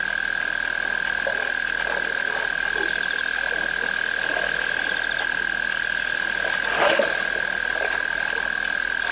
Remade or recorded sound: recorded